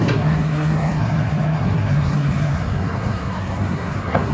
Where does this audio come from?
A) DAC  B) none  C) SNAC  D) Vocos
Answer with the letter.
C